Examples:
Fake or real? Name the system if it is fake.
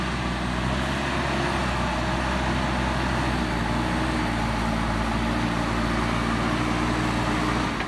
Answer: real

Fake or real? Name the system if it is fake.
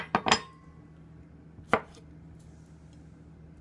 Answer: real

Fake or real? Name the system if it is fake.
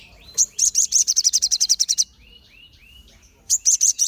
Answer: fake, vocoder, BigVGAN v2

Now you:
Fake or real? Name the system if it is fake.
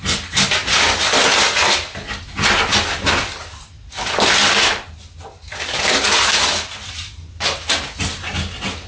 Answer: real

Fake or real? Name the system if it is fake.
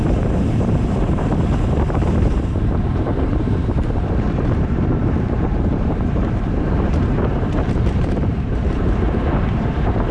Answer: fake, vocoder, BigVGAN v2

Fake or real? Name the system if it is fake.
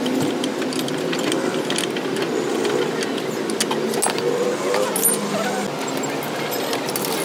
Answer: real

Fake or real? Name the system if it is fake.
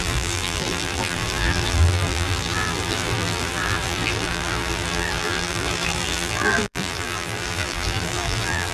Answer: fake, vocoder, BigVGAN v2